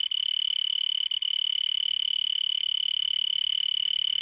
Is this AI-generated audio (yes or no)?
no